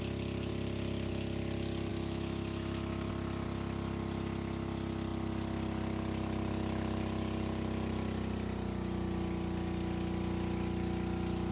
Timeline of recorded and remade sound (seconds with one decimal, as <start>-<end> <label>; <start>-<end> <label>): 0.0-1.9 recorded; 1.9-3.1 remade; 3.1-11.5 recorded